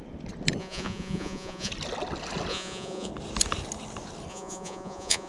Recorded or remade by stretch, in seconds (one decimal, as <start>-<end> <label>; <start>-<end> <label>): 0.0-0.6 recorded; 0.6-1.7 remade; 1.7-2.5 recorded; 2.5-3.1 remade; 3.1-4.3 recorded; 4.3-5.3 remade

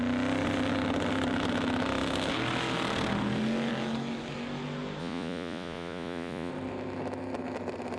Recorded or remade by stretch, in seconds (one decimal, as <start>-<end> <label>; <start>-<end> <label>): 0.0-5.0 recorded; 5.0-6.5 remade; 6.5-8.0 recorded

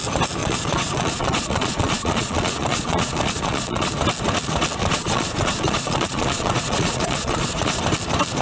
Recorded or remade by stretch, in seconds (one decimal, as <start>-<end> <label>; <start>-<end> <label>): 0.0-0.4 recorded; 0.4-3.9 remade; 3.9-4.8 recorded; 4.8-7.8 remade; 7.8-8.4 recorded

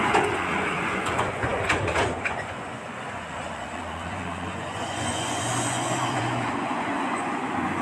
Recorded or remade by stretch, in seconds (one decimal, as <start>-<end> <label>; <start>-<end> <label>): 0.0-7.8 remade

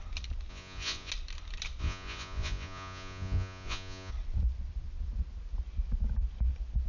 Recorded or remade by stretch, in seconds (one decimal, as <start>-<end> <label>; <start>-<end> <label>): 0.0-0.5 recorded; 0.5-1.1 remade; 1.1-1.8 recorded; 1.8-4.1 remade; 4.1-6.9 recorded

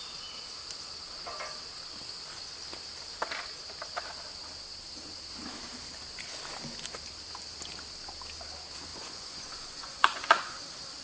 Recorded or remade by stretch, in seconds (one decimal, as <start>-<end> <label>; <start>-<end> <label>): 0.0-8.9 recorded; 8.9-10.6 remade; 10.6-11.0 recorded